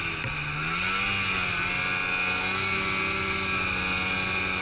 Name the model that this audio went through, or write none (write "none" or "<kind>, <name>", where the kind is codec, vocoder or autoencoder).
none